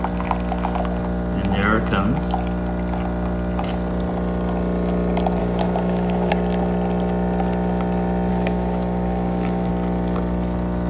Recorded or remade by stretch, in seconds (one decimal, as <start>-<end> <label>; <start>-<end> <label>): 0.0-5.4 recorded; 5.4-6.3 remade; 6.3-8.3 recorded; 8.3-9.7 remade; 9.7-10.9 recorded